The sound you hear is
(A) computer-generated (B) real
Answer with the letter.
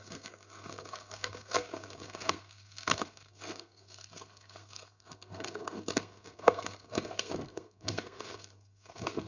A